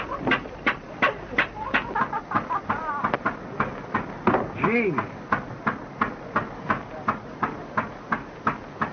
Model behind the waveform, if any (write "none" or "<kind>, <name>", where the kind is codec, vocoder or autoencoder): none